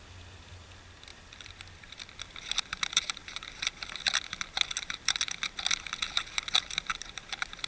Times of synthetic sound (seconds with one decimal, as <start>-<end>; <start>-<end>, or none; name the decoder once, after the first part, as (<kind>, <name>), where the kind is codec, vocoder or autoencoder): none